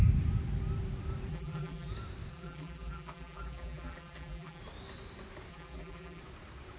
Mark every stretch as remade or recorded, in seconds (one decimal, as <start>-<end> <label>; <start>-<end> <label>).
0.0-1.3 recorded; 1.3-1.9 remade; 1.9-2.3 recorded; 2.3-4.6 remade; 4.6-5.5 recorded; 5.5-6.2 remade; 6.2-6.8 recorded